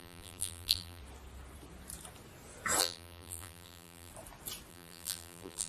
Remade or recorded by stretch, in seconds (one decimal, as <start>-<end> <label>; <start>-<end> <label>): 0.0-1.0 remade; 1.0-2.8 recorded; 2.8-4.1 remade; 4.1-4.7 recorded; 4.7-5.7 remade